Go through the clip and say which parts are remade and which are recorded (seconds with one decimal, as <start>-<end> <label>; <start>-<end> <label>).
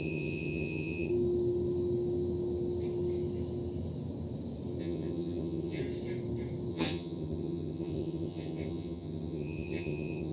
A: 0.0-1.1 remade; 1.1-4.8 recorded; 4.8-5.8 remade; 5.8-6.7 recorded; 6.7-10.3 remade